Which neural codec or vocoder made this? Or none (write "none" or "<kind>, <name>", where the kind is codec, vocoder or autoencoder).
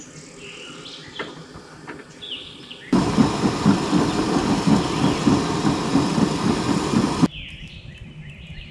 none